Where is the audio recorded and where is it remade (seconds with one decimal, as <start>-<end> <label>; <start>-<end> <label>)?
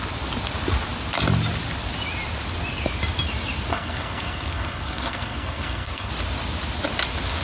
0.0-3.7 recorded; 3.7-6.1 remade; 6.1-7.4 recorded